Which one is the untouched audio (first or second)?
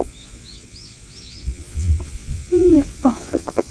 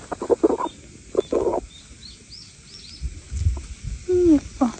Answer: second